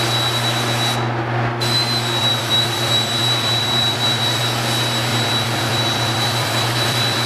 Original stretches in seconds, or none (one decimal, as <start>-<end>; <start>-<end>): 0.0-2.2; 4.4-5.1